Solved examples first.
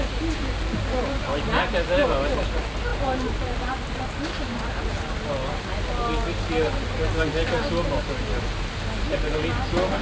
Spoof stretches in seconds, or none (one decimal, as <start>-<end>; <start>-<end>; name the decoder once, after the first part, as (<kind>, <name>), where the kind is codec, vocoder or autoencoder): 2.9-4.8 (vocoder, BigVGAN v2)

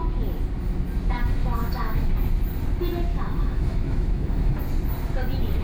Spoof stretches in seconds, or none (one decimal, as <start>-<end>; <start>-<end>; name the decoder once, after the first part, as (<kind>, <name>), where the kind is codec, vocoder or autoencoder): 1.4-2.1 (autoencoder, DAC-VAE); 3.1-4.6

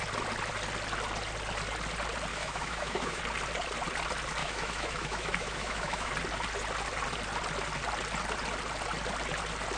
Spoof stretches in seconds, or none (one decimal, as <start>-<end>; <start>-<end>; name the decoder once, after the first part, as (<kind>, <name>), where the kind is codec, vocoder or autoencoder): 2.3-3.2 (autoencoder, DAC-VAE); 4.4-6.1